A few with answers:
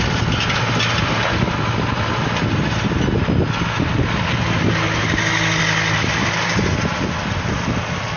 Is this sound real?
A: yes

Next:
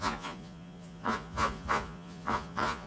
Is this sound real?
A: no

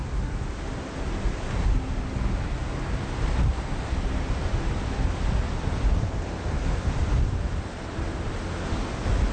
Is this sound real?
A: yes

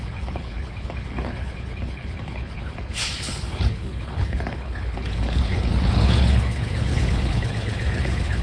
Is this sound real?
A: no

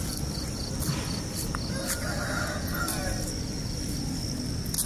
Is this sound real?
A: yes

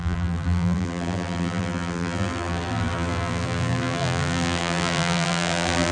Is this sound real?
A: no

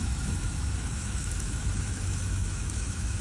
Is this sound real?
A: no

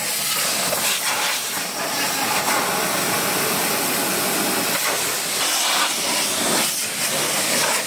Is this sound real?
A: yes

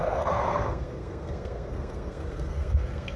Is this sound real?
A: no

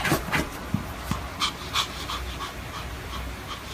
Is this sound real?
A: yes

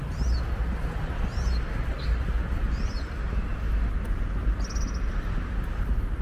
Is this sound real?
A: yes